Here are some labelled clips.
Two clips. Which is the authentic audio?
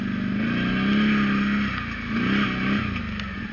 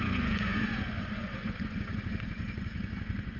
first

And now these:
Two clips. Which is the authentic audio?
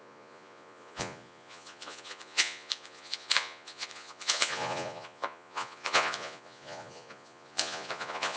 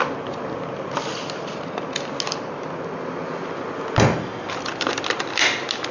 second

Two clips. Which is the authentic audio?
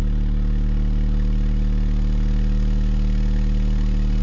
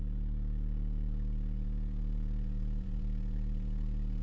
first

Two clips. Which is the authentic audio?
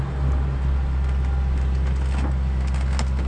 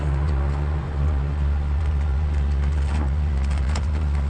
first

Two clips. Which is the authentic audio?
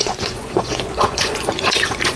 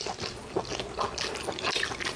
second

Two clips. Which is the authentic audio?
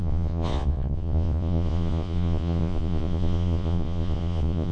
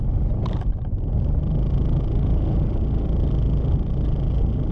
second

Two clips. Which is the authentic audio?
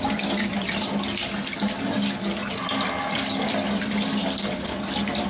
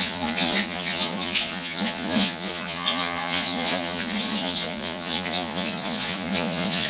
first